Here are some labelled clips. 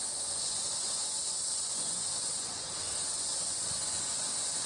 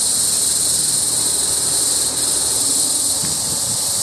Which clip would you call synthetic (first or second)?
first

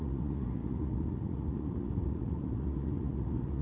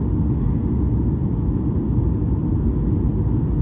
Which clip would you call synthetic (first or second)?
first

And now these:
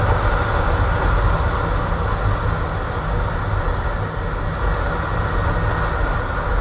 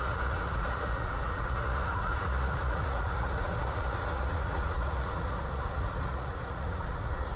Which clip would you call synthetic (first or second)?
second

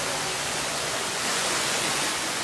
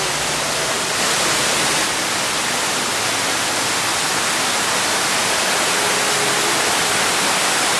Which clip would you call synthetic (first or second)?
first